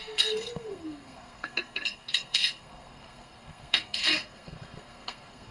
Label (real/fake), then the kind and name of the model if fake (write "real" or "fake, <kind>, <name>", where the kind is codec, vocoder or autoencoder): fake, codec, SNAC